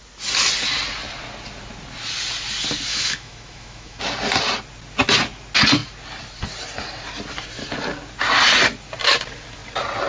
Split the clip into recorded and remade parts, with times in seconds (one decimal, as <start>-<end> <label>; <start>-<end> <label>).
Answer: 0.0-2.9 recorded; 2.9-4.0 remade; 4.0-10.1 recorded

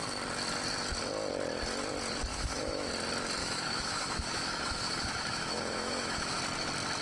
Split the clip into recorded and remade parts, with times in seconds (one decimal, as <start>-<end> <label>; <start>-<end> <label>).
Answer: 0.0-2.3 recorded; 2.3-2.9 remade; 2.9-3.4 recorded; 3.4-6.4 remade; 6.4-7.0 recorded

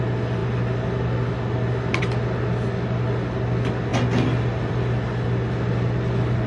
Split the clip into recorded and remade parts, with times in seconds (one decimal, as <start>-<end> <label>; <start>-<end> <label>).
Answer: 0.0-6.5 recorded